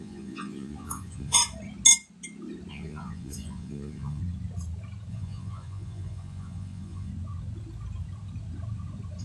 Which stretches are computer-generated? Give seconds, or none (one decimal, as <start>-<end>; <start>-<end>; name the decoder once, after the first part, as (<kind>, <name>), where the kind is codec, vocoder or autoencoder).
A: 0.0-1.4 (vocoder, Vocos); 2.7-4.2; 5.1-7.1